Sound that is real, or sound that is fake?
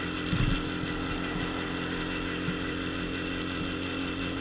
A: real